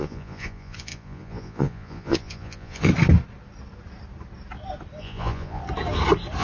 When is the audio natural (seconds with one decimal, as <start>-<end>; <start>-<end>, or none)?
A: 2.9-5.0; 5.6-6.4